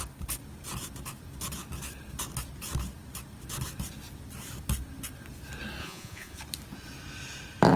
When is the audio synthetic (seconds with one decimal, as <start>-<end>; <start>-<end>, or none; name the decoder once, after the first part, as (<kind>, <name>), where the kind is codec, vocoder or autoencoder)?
5.8-6.4 (vocoder, Vocos)